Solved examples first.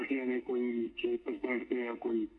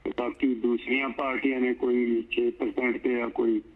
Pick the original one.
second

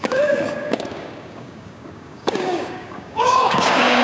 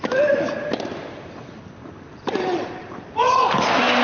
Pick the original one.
second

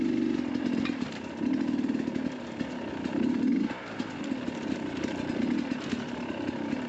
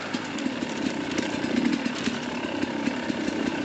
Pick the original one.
first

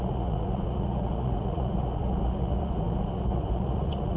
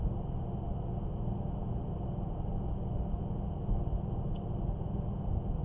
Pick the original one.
second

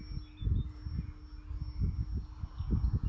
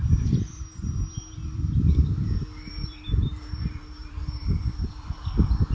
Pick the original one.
first